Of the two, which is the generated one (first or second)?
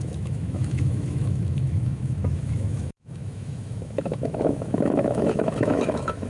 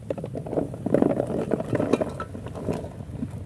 first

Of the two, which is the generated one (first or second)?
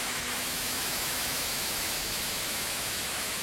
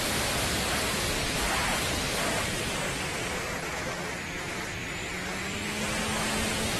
first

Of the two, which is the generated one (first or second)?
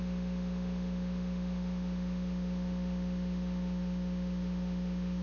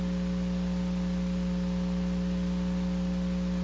first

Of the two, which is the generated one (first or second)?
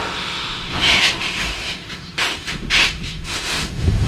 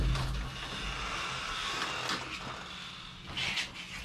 first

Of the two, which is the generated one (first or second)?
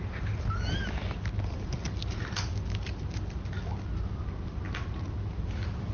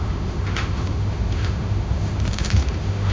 second